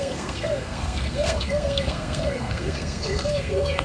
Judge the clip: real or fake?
fake